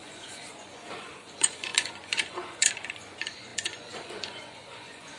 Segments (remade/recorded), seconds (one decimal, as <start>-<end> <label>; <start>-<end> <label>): 0.0-5.2 remade